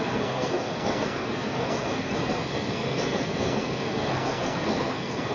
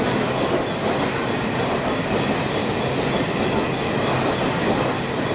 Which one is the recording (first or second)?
second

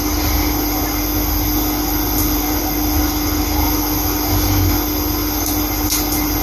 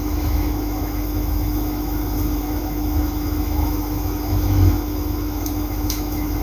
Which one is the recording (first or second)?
first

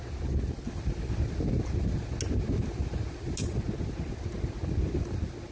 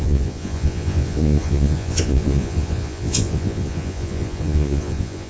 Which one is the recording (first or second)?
first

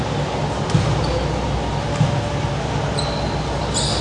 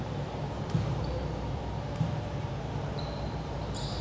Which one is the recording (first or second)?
first